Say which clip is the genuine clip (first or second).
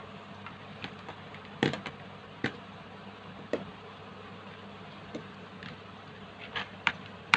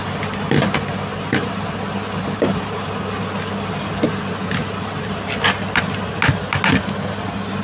second